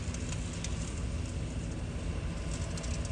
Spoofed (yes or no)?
no